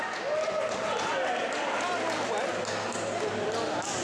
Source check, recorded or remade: recorded